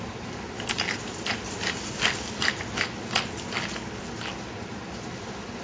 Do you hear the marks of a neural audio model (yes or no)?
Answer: no